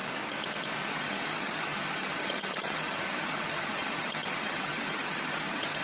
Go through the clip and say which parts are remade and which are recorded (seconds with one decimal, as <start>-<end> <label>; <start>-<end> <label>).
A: 0.0-0.9 recorded; 0.9-5.8 remade